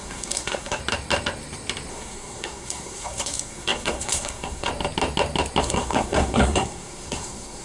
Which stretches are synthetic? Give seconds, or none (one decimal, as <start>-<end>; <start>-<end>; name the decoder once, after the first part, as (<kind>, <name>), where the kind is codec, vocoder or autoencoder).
0.0-0.8 (codec, SNAC); 1.9-4.7; 5.6-7.6